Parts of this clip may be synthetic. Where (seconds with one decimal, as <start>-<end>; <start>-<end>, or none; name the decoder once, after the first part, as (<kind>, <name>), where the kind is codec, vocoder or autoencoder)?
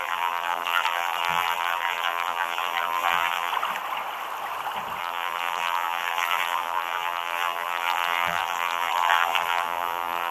0.0-3.5 (vocoder, BigVGAN v2); 5.0-10.3